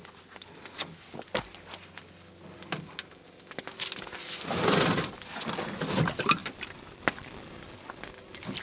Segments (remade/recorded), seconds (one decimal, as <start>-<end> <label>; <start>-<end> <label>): 0.0-8.6 recorded

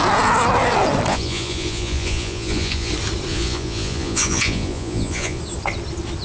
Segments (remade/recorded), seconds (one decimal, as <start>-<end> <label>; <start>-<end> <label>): 0.0-1.1 recorded; 1.1-2.9 remade; 2.9-3.3 recorded; 3.3-5.4 remade; 5.4-6.2 recorded

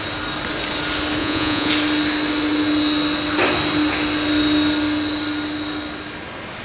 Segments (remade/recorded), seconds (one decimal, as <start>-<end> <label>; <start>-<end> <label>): 0.0-1.2 recorded; 1.2-1.7 remade; 1.7-6.6 recorded

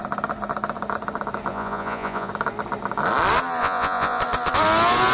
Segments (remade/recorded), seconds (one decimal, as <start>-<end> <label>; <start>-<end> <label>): 0.0-1.5 recorded; 1.5-2.3 remade; 2.3-3.6 recorded; 3.6-4.2 remade; 4.2-5.1 recorded

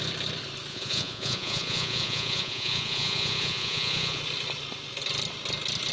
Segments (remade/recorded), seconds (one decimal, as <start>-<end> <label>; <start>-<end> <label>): 0.0-0.7 recorded; 0.7-4.2 remade; 4.2-5.9 recorded

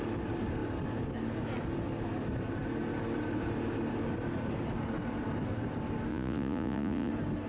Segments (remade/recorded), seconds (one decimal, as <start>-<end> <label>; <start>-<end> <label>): 0.0-6.1 recorded; 6.1-7.1 remade; 7.1-7.5 recorded

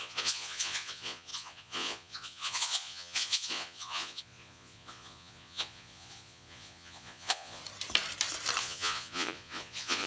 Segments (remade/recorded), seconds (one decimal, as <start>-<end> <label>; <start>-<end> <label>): 0.0-7.6 remade; 7.6-8.6 recorded; 8.6-10.1 remade

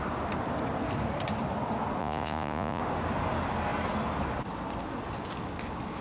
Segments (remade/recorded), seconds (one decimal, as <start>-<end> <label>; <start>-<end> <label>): 0.0-2.0 recorded; 2.0-2.8 remade; 2.8-6.0 recorded